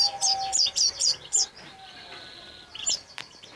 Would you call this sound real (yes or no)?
no